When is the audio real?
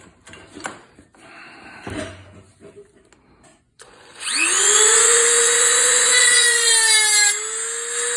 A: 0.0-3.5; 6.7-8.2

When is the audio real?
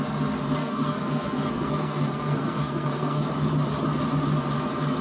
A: 0.0-0.6; 3.3-5.0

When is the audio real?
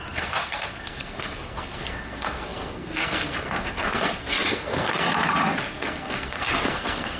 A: none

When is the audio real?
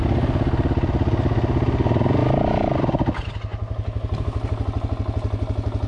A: 0.0-5.9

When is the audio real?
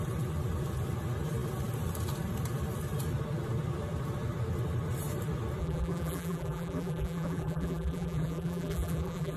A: 0.0-5.6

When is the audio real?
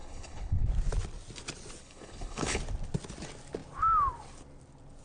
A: 0.7-1.8; 2.6-5.0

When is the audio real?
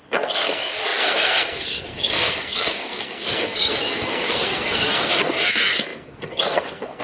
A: none